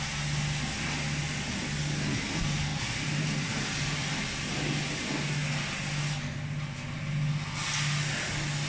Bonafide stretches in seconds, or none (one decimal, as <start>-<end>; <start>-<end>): 0.0-2.7; 4.2-8.7